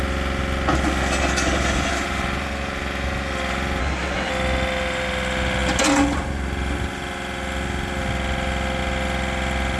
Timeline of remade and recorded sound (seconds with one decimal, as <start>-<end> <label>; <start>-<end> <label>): 0.0-3.8 recorded; 3.8-4.3 remade; 4.3-9.8 recorded